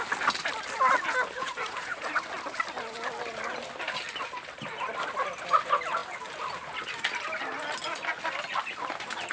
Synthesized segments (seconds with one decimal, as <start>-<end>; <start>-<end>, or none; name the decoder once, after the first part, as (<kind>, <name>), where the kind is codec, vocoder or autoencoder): 1.4-2.2 (vocoder, Vocos)